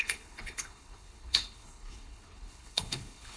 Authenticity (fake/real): fake